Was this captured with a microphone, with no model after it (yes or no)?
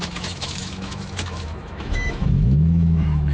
no